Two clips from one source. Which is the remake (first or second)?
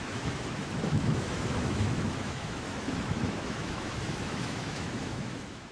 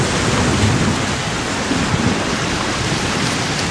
first